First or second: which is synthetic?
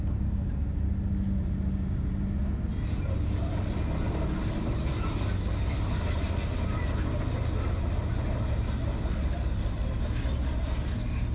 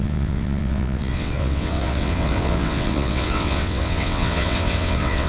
second